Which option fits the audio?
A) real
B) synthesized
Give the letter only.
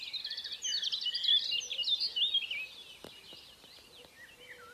A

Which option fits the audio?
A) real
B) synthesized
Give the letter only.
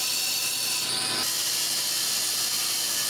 A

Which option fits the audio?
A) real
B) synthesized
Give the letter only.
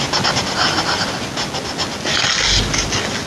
A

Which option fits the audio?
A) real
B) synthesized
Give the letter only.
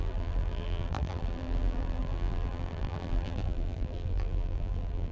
B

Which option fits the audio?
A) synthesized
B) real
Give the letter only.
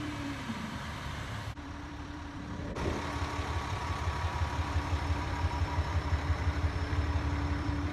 A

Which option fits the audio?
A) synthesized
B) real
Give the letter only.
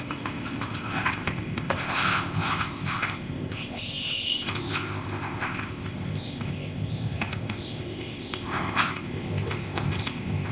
A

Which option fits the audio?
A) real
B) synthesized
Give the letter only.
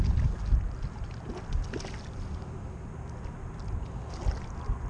A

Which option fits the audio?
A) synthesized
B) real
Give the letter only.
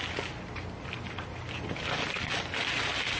B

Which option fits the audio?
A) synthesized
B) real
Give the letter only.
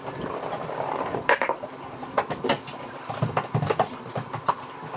A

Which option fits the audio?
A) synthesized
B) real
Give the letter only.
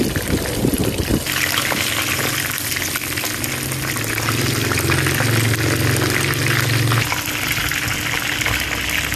B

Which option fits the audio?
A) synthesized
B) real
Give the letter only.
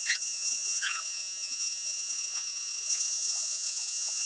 A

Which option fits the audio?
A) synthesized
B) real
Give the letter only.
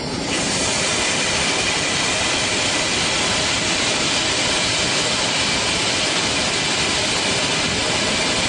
B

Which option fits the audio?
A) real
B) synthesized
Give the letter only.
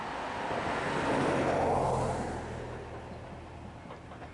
A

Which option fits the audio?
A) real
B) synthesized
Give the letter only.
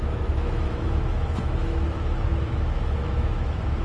B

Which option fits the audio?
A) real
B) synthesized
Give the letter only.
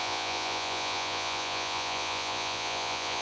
B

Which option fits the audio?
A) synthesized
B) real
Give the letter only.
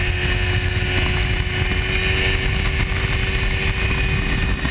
B